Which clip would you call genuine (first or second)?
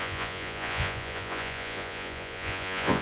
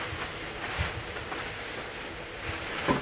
second